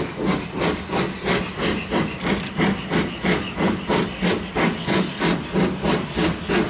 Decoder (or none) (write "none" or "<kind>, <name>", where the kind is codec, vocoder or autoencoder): none